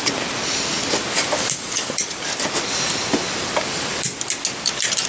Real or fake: real